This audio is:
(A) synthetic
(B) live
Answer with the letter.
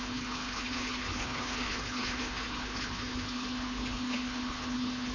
A